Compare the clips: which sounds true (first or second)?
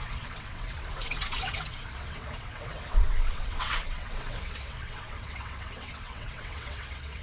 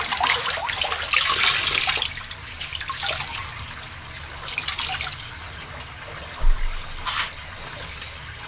second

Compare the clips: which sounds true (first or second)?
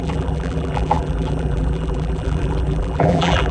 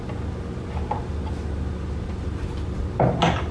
second